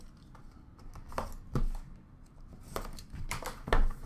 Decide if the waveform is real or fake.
real